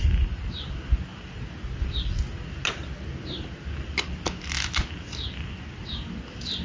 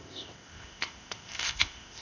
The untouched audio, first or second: first